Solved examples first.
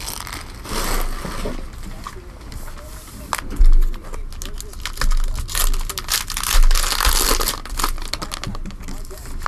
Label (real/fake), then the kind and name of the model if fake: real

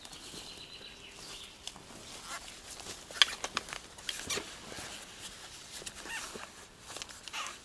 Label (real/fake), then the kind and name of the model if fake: real